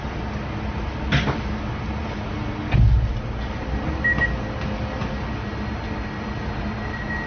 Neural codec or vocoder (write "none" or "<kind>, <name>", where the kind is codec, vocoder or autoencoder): none